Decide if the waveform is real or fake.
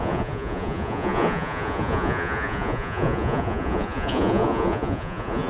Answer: fake